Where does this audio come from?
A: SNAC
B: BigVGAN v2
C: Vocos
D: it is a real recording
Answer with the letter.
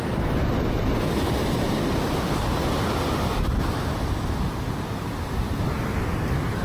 D